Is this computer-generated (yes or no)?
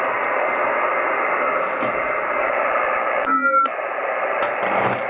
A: no